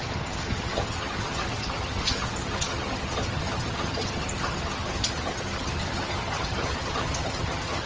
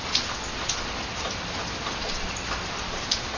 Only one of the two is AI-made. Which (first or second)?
first